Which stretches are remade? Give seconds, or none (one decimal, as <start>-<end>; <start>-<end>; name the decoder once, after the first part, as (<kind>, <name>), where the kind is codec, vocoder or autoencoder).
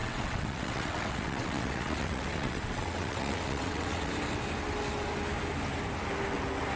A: 0.0-4.1 (vocoder, WaveNeXt)